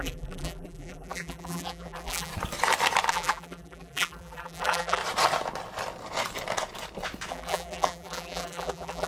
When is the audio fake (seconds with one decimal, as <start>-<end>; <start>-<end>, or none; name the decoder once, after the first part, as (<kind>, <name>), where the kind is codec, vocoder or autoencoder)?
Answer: 0.0-2.3 (vocoder, BigVGAN v2); 3.1-5.0; 7.3-9.1